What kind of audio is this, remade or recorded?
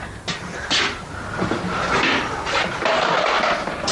recorded